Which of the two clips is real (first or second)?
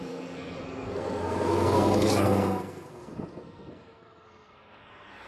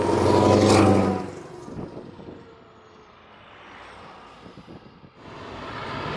second